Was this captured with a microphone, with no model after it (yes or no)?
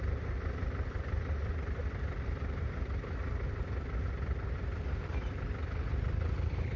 no